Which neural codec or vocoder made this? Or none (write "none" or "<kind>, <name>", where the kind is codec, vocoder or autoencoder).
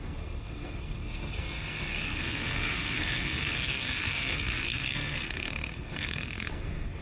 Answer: codec, SNAC